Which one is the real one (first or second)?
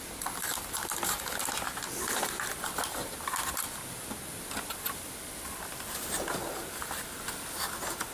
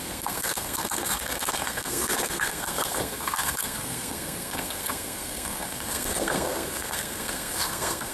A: first